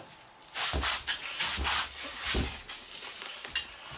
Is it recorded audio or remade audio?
recorded